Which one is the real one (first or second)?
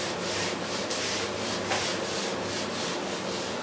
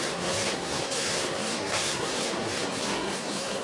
first